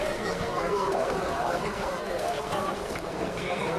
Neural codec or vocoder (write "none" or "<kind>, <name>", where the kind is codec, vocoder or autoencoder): codec, SNAC